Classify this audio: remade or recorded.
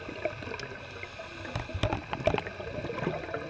recorded